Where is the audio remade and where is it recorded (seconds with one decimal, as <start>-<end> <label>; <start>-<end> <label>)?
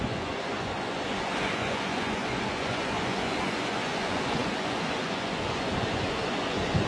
0.0-6.9 remade